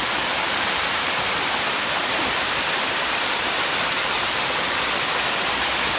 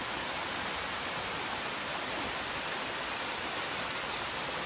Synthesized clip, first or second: first